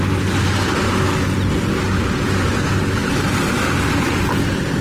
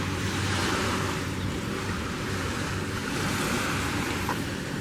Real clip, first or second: first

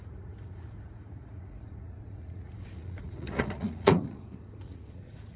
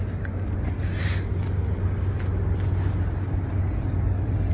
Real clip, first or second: second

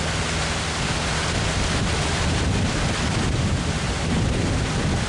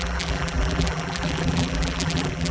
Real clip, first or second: first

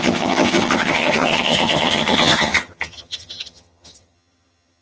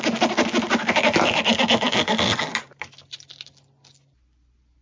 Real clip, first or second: second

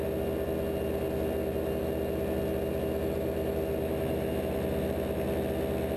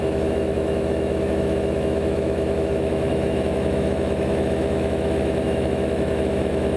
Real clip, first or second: first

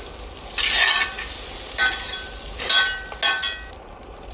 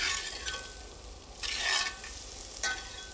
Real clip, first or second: first